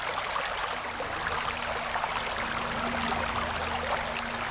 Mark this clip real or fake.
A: real